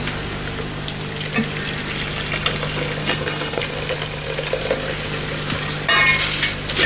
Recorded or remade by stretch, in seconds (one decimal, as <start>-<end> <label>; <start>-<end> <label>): 0.0-3.0 recorded; 3.0-3.6 remade; 3.6-6.9 recorded